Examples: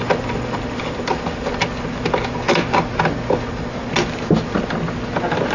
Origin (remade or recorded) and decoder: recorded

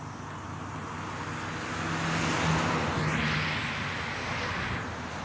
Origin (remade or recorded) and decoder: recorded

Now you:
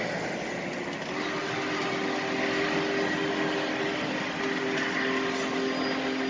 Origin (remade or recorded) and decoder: recorded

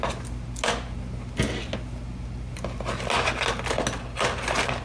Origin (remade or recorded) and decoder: recorded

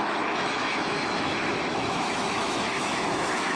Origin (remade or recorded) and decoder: remade, autoencoder, DAC-VAE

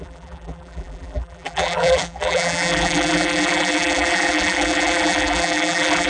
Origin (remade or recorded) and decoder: remade, vocoder, BigVGAN v2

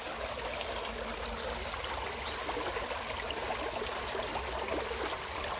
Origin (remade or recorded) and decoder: recorded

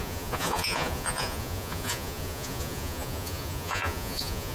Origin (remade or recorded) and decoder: remade, vocoder, Vocos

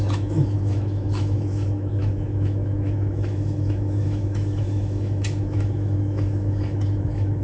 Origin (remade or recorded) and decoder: remade, autoencoder, DAC-VAE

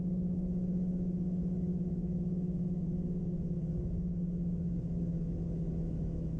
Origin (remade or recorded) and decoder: remade, autoencoder, DAC-VAE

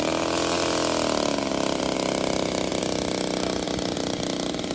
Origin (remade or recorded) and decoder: recorded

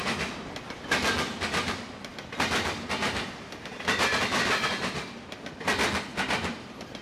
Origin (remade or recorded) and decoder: recorded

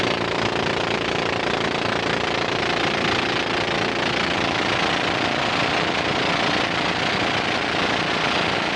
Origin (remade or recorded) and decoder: recorded